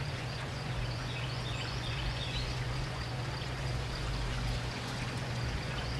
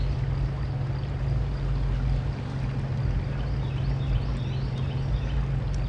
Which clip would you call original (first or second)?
second